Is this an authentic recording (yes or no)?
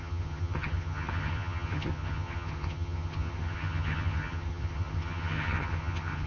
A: no